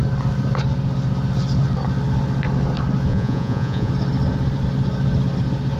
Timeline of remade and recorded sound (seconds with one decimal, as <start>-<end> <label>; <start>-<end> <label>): 0.0-3.1 recorded; 3.1-3.9 remade; 3.9-5.8 recorded